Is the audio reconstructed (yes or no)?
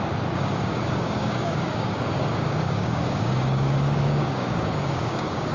yes